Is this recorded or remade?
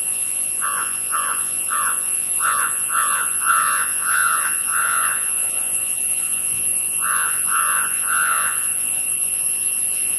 remade